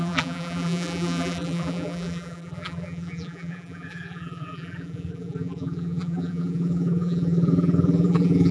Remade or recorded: remade